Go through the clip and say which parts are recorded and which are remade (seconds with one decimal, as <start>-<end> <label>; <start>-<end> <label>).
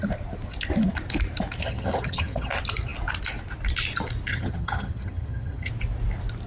0.0-1.6 recorded; 1.6-2.5 remade; 2.5-4.3 recorded; 4.3-5.7 remade; 5.7-6.5 recorded